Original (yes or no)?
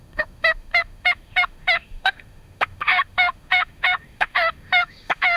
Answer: no